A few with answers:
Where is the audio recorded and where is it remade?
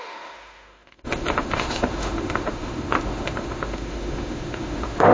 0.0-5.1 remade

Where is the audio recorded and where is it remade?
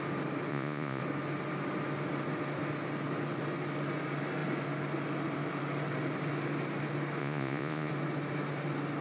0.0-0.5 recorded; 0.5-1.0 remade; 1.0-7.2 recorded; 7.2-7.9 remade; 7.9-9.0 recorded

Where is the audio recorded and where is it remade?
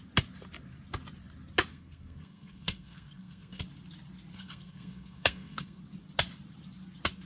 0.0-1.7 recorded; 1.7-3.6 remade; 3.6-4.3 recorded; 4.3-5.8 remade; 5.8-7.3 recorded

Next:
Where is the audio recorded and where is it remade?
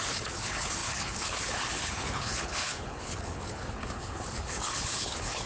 0.0-5.5 remade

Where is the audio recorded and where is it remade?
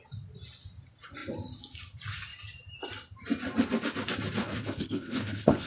0.0-4.4 recorded; 4.4-5.7 remade